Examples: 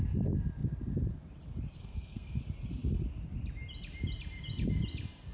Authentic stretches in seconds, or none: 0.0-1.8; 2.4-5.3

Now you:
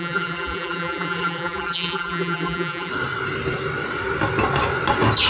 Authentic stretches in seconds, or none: 2.9-5.3

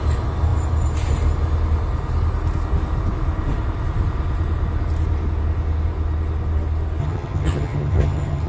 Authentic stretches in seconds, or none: 0.0-7.0

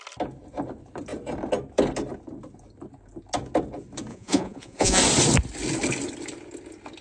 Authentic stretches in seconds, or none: 0.0-4.1; 5.0-7.0

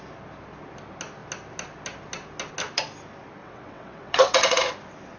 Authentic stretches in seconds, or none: 0.0-3.4; 4.7-5.2

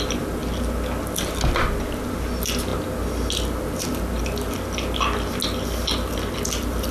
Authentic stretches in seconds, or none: 0.0-6.9

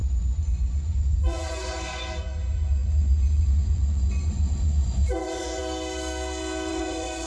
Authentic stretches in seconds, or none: 5.6-6.7

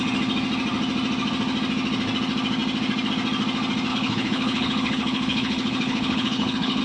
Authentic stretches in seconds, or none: 0.0-3.9